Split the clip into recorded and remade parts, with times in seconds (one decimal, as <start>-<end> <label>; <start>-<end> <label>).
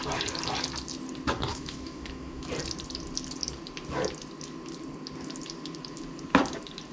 0.0-1.5 recorded; 1.5-2.5 remade; 2.5-6.9 recorded